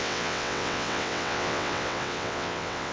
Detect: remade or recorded remade